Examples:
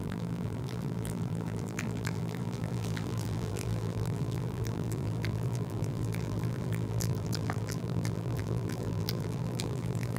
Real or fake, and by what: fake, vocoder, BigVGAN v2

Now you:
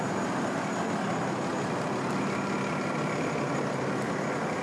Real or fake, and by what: real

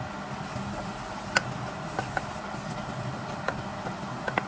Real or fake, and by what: real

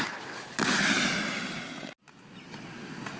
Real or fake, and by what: real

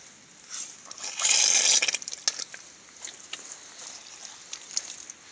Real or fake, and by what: real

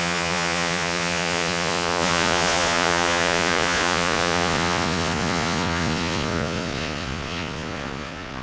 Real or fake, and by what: fake, vocoder, Vocos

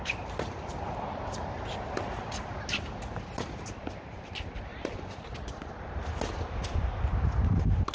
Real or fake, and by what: real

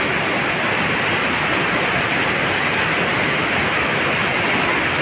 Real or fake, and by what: real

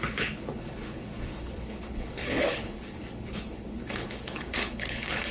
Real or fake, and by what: fake, codec, HILCodec